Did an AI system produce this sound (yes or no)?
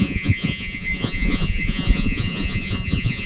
yes